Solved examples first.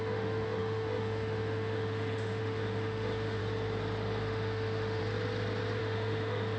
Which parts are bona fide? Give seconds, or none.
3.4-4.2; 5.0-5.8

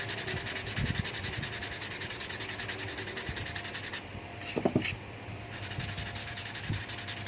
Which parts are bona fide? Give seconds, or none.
0.0-6.2; 6.8-7.3

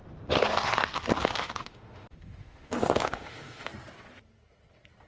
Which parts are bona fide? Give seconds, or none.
0.0-1.2; 3.7-5.1

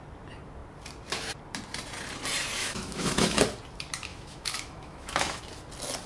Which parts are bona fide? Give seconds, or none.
0.0-2.6; 3.4-4.1; 5.4-6.1